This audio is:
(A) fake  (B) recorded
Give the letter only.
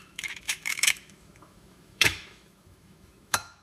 A